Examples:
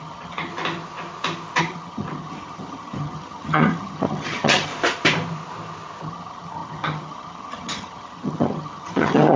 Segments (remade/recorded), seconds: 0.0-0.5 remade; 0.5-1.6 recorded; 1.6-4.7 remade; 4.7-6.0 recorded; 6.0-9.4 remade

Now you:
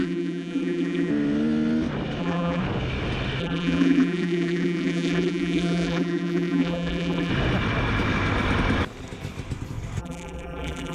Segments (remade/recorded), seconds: 0.0-1.1 remade; 1.1-2.2 recorded; 2.2-2.6 remade; 2.6-3.4 recorded; 3.4-7.3 remade; 7.3-10.0 recorded; 10.0-10.9 remade

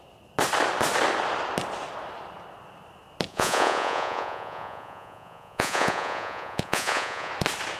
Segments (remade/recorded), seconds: 0.0-3.3 recorded; 3.3-7.3 remade; 7.3-7.8 recorded

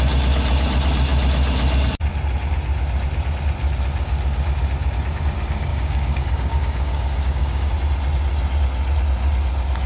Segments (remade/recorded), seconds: 0.0-5.7 recorded; 5.7-7.7 remade; 7.7-9.9 recorded

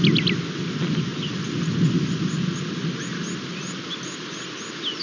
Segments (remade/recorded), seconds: 0.0-5.0 recorded

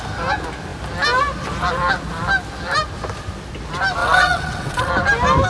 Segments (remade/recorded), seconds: 0.0-4.0 recorded; 4.0-4.9 remade; 4.9-5.5 recorded